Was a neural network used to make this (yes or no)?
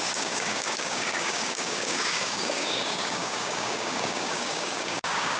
yes